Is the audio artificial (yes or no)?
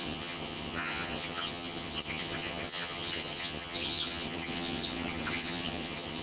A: yes